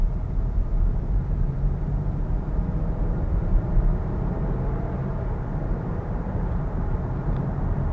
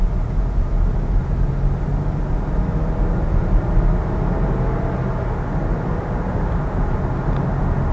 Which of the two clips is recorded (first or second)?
second